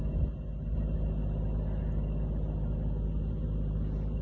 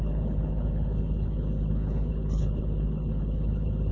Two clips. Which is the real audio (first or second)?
first